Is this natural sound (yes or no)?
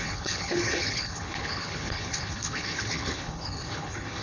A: no